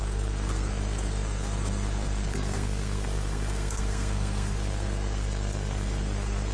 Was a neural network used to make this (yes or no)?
yes